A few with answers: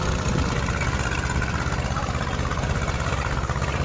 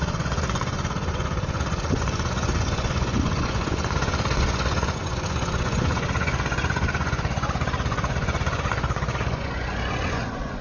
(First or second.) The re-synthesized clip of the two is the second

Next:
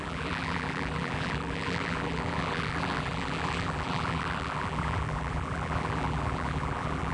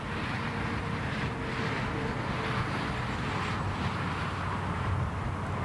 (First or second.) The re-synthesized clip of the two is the first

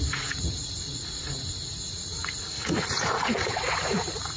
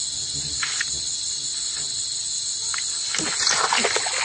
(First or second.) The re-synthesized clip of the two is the first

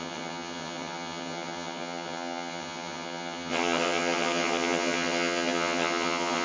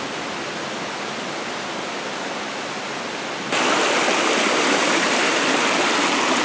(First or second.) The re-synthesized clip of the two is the first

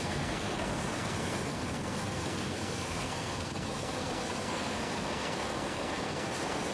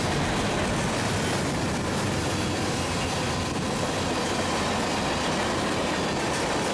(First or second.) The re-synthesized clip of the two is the first